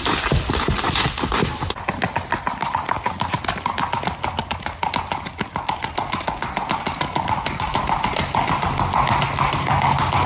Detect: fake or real real